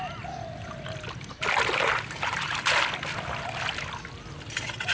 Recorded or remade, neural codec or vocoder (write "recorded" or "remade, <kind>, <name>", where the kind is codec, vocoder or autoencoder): recorded